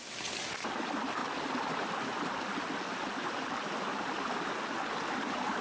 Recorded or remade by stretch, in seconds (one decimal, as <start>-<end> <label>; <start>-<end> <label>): 0.0-5.6 recorded